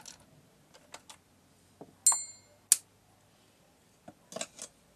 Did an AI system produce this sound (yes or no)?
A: no